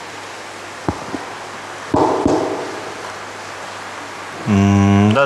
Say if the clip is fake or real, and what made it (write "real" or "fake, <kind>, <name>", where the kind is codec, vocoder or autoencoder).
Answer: real